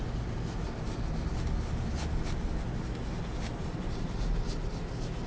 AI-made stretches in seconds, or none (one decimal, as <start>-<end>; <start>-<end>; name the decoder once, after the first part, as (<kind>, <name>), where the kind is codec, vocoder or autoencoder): none